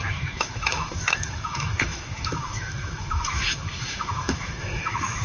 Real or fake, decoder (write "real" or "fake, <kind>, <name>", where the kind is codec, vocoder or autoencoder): fake, autoencoder, DAC-VAE